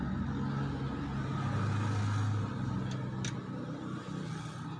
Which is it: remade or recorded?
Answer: recorded